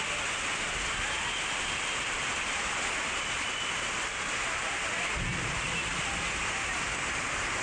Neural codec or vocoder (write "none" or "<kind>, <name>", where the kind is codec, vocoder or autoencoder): none